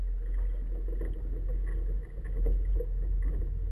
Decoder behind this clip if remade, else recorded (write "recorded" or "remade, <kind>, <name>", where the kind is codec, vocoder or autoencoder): recorded